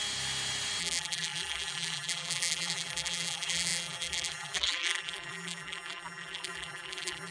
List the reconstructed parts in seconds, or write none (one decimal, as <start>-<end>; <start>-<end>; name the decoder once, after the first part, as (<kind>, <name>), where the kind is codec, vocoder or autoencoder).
0.8-7.3 (vocoder, BigVGAN v2)